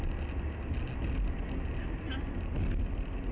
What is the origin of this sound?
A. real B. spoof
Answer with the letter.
A